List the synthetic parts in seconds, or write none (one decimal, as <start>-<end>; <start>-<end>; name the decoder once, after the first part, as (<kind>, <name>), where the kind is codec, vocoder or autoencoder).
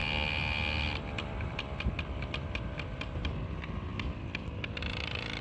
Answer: 3.2-3.9 (vocoder, BigVGAN v2)